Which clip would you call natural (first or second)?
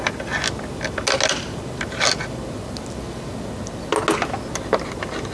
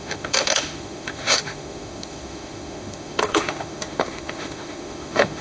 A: first